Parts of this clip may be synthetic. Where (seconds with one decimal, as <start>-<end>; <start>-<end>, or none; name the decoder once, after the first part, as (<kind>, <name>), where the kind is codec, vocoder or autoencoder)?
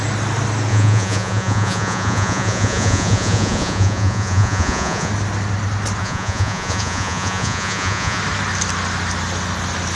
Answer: 0.7-5.1 (vocoder, Vocos); 6.0-8.2